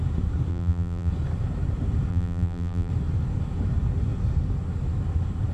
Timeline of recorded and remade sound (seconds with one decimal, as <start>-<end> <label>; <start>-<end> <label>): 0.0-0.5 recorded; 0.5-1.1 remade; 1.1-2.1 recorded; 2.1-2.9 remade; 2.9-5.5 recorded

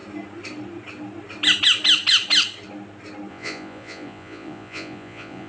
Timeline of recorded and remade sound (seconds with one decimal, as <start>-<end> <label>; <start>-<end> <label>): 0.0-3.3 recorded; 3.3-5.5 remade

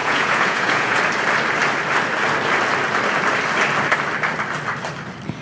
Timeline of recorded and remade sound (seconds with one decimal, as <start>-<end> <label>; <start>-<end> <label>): 0.0-1.0 remade; 1.0-5.4 recorded

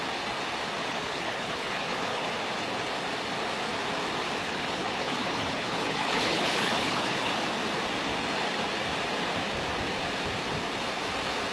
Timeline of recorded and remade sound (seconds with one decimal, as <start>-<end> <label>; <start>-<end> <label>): 0.0-0.8 recorded; 0.8-2.3 remade; 2.3-4.4 recorded; 4.4-7.3 remade; 7.3-11.5 recorded

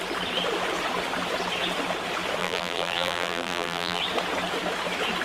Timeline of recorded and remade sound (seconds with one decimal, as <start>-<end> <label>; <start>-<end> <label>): 0.0-2.4 recorded; 2.4-4.0 remade; 4.0-5.2 recorded

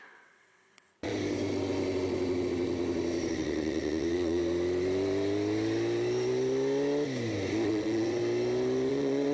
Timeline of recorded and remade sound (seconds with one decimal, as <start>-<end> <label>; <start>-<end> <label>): 0.0-1.1 remade; 1.1-3.3 recorded; 3.3-4.4 remade; 4.4-7.7 recorded; 7.7-8.2 remade; 8.2-8.9 recorded; 8.9-9.3 remade

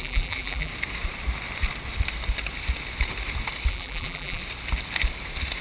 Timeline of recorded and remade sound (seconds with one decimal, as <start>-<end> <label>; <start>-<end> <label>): 0.0-0.7 remade; 0.7-3.7 recorded; 3.7-4.4 remade; 4.4-5.6 recorded

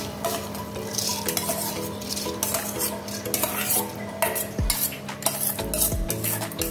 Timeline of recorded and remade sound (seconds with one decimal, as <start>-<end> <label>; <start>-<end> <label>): 0.0-6.7 recorded